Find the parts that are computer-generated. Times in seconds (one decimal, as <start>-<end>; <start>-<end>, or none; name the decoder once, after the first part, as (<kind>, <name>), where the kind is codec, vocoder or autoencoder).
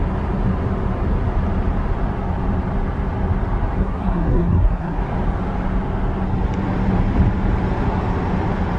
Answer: 3.8-5.0 (codec, SNAC)